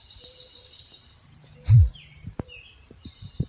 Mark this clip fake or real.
fake